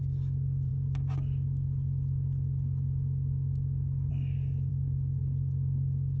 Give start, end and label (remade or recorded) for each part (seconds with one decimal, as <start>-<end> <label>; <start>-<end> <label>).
0.0-6.2 recorded